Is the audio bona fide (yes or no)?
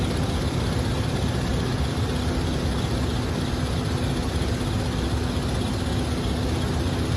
yes